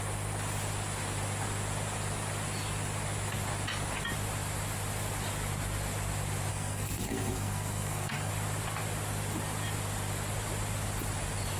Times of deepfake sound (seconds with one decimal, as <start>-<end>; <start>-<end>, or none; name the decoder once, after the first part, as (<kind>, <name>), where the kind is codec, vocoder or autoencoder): 6.5-8.3 (codec, SNAC)